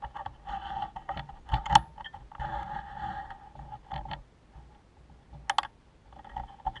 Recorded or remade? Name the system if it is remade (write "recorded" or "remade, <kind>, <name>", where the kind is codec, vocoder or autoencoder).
recorded